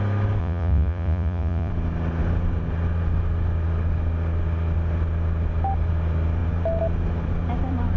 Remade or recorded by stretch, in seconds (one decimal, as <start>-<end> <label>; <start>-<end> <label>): 0.0-0.4 recorded; 0.4-1.7 remade; 1.7-8.0 recorded